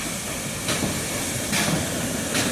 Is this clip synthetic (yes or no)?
no